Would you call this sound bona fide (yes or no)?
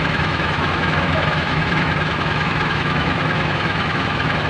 no